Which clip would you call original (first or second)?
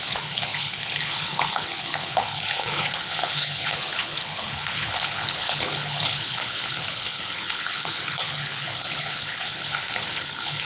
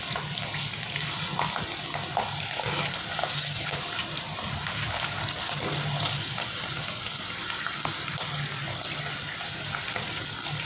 second